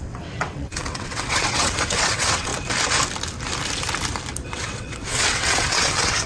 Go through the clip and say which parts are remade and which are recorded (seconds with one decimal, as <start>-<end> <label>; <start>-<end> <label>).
0.0-2.5 remade; 2.5-4.5 recorded; 4.5-6.3 remade